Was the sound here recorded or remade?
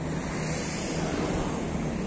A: recorded